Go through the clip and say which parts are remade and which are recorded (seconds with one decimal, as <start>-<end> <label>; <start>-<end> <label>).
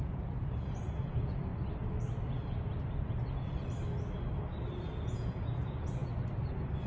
0.0-1.5 remade; 1.5-4.8 recorded; 4.8-6.0 remade; 6.0-6.9 recorded